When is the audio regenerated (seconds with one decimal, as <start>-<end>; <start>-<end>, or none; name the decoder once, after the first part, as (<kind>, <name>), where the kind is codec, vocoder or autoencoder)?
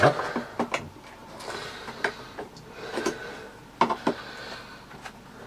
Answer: none